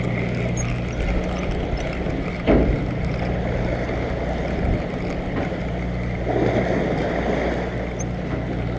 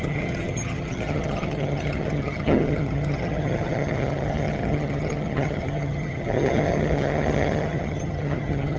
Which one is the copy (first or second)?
second